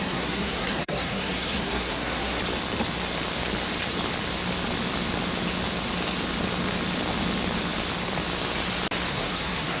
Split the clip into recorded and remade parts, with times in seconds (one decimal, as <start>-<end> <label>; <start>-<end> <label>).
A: 0.0-2.4 remade; 2.4-9.1 recorded; 9.1-9.8 remade